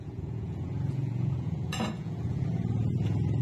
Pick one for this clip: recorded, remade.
remade